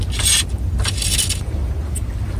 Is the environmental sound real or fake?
real